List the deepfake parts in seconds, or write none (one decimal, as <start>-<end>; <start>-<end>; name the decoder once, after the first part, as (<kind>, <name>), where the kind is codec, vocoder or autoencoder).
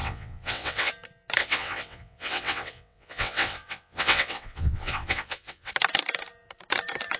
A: 0.0-0.9 (vocoder, WaveNeXt); 1.4-5.7